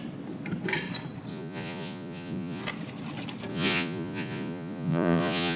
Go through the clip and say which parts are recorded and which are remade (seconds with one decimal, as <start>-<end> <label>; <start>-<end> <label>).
0.0-1.3 recorded; 1.3-2.6 remade; 2.6-3.5 recorded; 3.5-5.6 remade